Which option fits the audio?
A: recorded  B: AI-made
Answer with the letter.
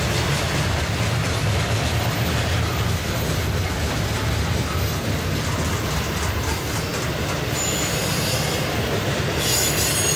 A